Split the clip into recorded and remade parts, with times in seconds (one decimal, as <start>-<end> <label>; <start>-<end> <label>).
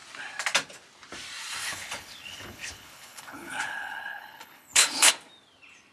0.0-1.6 recorded; 1.6-5.1 remade; 5.1-5.9 recorded